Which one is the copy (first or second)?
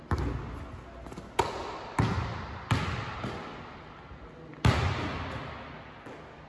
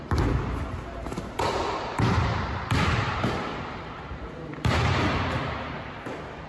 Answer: second